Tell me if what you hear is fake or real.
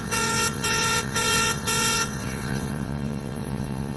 fake